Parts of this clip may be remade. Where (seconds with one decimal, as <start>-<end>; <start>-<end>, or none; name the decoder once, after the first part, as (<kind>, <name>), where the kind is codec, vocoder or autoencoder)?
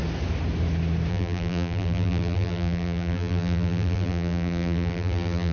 1.1-5.5 (vocoder, BigVGAN v2)